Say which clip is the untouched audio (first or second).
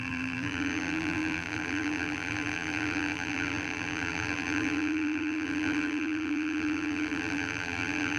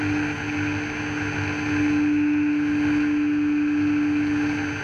second